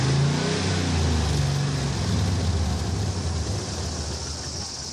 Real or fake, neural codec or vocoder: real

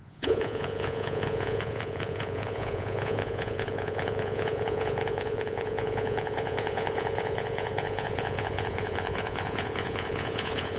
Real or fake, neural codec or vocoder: fake, vocoder, Vocos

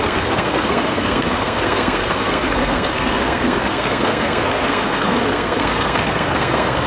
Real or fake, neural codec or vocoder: fake, codec, SNAC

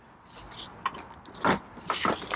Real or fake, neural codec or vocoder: real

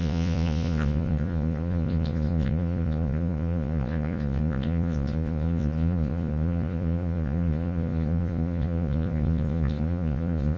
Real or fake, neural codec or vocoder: fake, vocoder, Vocos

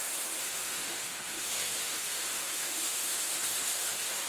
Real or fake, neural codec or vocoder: fake, autoencoder, DAC-VAE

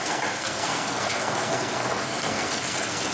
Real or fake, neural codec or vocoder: fake, codec, SNAC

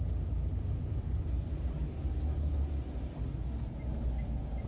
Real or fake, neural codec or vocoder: real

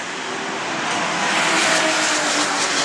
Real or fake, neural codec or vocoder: real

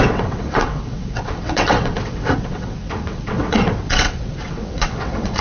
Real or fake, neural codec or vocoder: fake, vocoder, WaveNeXt